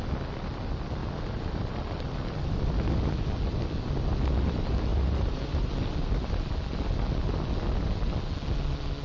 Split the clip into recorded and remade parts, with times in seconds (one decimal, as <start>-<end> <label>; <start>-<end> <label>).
0.0-4.9 recorded; 4.9-5.7 remade; 5.7-9.0 recorded